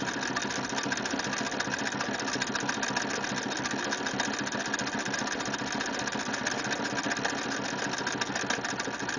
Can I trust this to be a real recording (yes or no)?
yes